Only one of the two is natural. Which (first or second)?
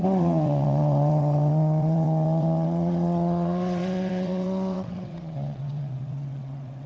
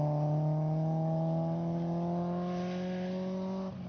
second